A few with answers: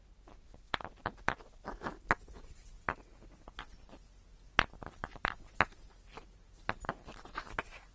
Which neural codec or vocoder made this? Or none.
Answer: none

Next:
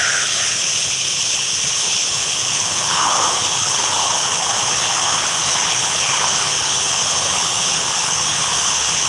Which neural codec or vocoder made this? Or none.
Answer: codec, HILCodec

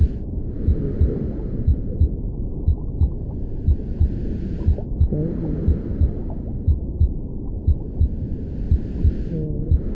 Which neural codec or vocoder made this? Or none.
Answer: none